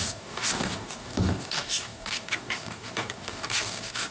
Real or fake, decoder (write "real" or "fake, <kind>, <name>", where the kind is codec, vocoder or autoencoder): fake, codec, DAC